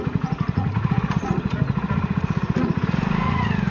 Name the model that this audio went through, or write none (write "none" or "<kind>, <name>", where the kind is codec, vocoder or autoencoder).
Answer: vocoder, Vocos